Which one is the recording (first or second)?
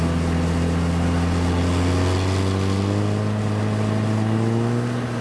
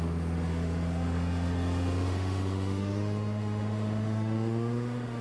first